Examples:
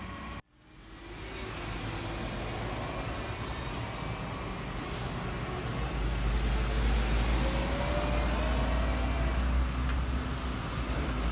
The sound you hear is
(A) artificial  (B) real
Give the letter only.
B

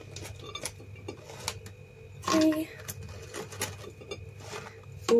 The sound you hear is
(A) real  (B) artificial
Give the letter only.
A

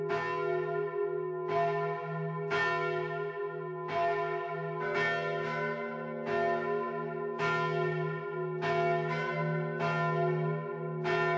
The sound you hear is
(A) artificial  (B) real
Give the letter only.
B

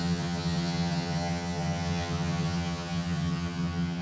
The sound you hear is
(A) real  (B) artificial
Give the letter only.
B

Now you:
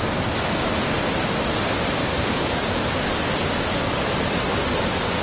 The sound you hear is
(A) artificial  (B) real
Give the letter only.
B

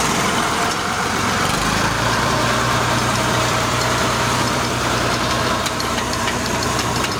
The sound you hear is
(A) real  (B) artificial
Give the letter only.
B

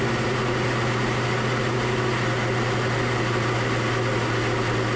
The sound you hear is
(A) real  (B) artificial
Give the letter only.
A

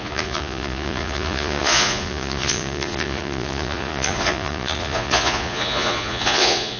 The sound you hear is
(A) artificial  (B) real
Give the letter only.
A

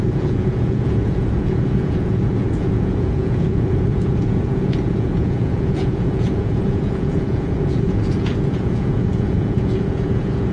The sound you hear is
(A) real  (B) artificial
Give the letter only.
B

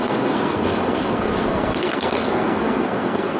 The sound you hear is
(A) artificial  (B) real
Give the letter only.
A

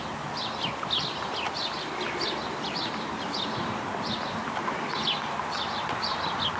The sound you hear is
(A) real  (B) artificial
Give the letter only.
A